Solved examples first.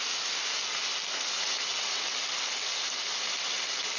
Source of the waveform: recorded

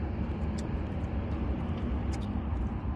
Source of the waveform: recorded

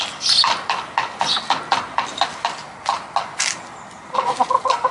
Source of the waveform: recorded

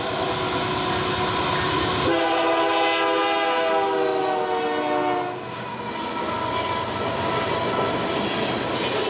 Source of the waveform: recorded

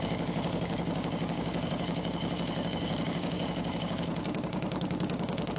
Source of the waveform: remade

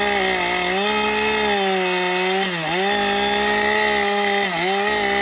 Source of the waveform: recorded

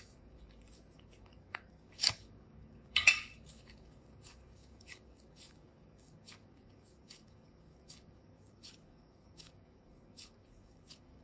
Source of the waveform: remade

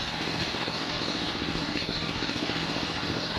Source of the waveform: remade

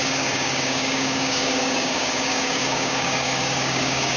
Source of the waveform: remade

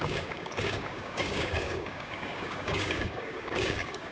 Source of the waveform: remade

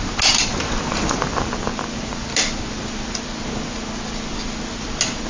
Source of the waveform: recorded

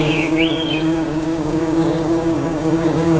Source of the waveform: remade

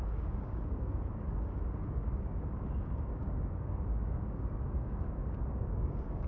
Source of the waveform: remade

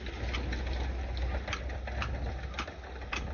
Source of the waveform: recorded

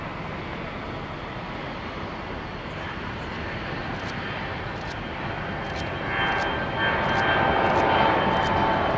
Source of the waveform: recorded